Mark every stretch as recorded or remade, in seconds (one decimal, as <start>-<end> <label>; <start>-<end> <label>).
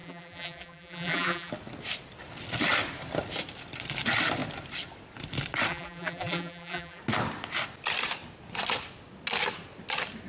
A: 0.0-1.5 remade; 1.5-5.7 recorded; 5.7-7.0 remade; 7.0-10.3 recorded